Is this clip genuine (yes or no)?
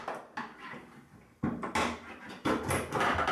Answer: yes